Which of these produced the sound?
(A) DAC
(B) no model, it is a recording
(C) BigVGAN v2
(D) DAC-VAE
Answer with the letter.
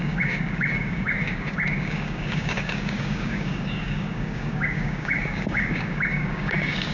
A